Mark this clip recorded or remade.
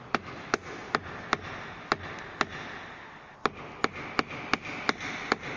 recorded